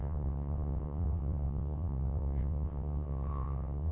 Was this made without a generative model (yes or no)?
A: no